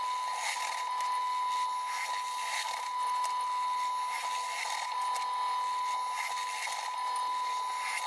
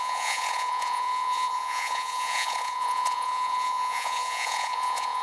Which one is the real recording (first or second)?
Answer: first